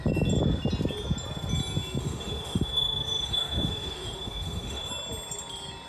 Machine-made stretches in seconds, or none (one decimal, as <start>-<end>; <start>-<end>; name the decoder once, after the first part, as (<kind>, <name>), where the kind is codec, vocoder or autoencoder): 2.0-4.9 (autoencoder, DAC-VAE)